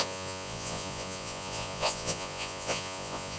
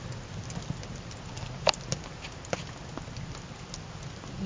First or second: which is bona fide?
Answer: second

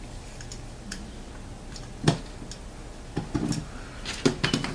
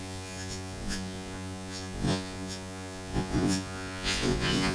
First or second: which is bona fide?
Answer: first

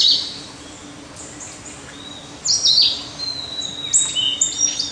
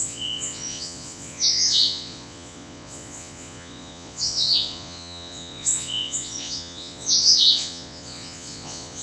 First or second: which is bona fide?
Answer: first